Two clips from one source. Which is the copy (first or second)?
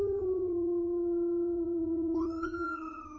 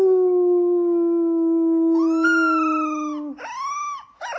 first